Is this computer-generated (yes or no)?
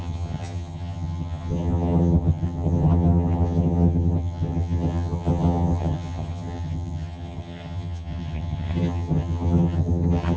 yes